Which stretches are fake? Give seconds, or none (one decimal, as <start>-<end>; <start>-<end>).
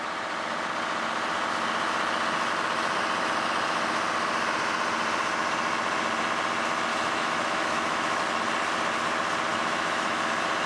6.9-8.2; 9.5-10.2